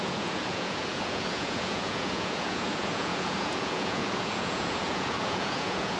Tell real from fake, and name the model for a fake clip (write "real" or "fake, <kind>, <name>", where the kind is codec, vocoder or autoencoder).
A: fake, vocoder, Vocos